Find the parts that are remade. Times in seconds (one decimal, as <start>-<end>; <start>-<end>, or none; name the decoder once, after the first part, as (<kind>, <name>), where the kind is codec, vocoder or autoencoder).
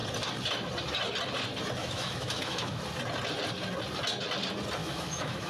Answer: 1.8-2.8 (autoencoder, DAC-VAE); 4.8-5.5